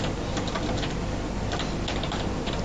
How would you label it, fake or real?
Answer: real